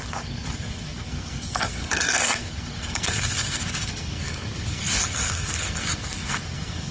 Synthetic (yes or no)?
yes